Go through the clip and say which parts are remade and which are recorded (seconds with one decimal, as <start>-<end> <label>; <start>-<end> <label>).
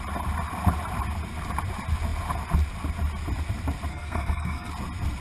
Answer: 0.0-3.9 recorded; 3.9-4.7 remade; 4.7-5.2 recorded